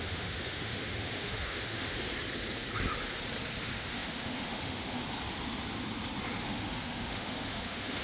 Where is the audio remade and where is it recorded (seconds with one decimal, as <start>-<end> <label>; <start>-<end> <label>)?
0.0-2.1 remade; 2.1-3.6 recorded; 3.6-5.0 remade; 5.0-6.4 recorded; 6.4-8.0 remade